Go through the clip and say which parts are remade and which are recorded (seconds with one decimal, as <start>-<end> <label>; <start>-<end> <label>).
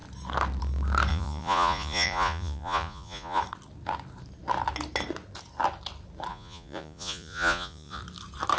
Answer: 0.0-1.1 recorded; 1.1-3.4 remade; 3.4-6.3 recorded; 6.3-8.0 remade; 8.0-8.6 recorded